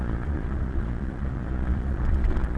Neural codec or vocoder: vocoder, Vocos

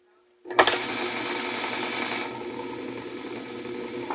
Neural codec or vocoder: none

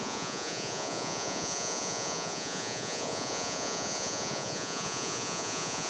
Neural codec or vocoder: vocoder, Vocos